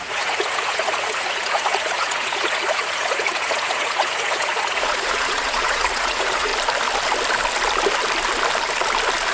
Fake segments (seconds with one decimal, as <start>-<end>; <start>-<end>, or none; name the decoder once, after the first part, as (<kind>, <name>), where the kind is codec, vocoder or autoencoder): 0.0-6.5 (vocoder, Vocos)